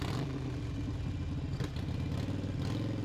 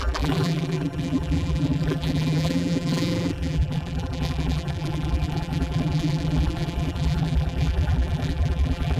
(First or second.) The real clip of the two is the first